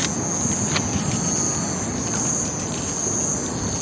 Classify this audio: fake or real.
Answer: real